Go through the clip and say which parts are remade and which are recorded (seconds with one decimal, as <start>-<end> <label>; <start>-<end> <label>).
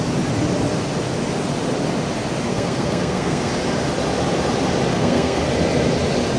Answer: 0.0-2.5 recorded; 2.5-3.5 remade; 3.5-4.9 recorded; 4.9-5.4 remade; 5.4-6.4 recorded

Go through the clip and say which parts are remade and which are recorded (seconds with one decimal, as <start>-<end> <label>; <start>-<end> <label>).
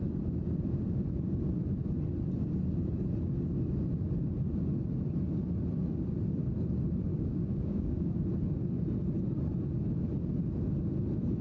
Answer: 0.0-7.1 recorded; 7.1-8.2 remade; 8.2-11.4 recorded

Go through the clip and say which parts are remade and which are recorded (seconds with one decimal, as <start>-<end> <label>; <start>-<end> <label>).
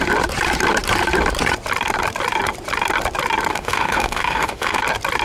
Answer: 0.0-3.5 recorded; 3.5-4.8 remade; 4.8-5.2 recorded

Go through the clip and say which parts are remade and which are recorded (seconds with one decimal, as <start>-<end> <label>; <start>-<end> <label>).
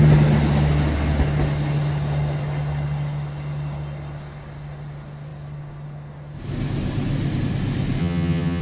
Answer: 0.0-8.0 recorded; 8.0-8.6 remade